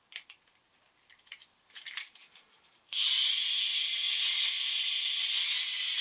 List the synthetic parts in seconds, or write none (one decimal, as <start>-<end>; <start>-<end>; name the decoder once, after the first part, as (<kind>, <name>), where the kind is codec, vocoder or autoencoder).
1.4-3.0 (vocoder, BigVGAN v2); 3.7-5.2